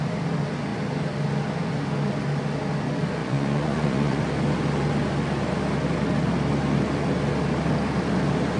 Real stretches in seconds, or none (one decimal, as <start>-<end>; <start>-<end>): 0.0-3.2; 4.2-8.6